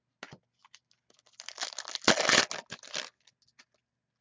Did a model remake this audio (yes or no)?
no